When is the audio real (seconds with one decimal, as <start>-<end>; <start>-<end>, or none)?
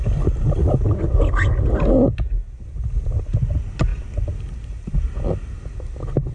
0.0-3.9; 5.2-6.3